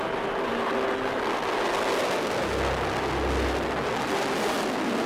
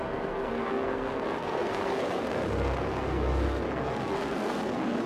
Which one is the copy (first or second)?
second